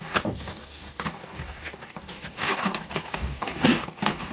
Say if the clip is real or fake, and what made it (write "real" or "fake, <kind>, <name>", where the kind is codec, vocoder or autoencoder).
fake, codec, DAC